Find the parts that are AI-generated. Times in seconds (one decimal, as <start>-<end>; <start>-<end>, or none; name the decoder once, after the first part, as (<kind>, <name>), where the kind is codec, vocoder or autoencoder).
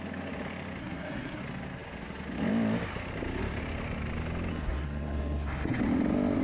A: 0.8-1.4 (codec, SNAC); 4.5-5.8